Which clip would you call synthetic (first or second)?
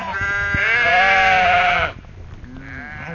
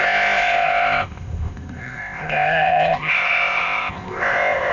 second